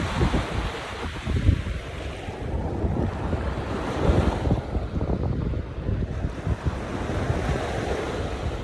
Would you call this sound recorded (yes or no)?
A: yes